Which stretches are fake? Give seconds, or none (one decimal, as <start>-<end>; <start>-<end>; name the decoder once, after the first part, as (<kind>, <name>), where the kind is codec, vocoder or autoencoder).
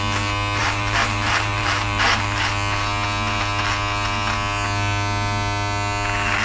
0.6-2.5 (vocoder, BigVGAN v2)